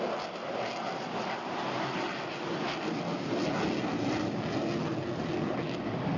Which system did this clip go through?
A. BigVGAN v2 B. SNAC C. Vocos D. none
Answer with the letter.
D